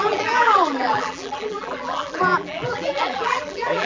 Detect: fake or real fake